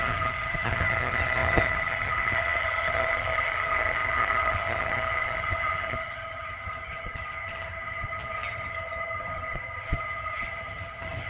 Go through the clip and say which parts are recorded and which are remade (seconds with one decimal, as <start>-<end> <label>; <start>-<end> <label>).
0.0-11.3 remade